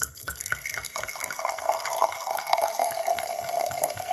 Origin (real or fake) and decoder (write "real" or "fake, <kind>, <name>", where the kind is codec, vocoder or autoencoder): fake, codec, SNAC